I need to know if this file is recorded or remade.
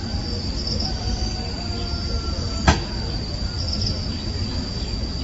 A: recorded